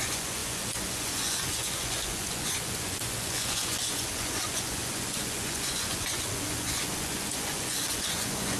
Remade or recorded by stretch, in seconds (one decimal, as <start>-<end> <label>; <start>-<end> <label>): 0.0-8.6 remade